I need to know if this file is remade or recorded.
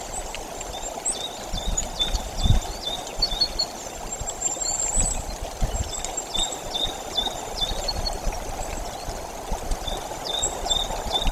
recorded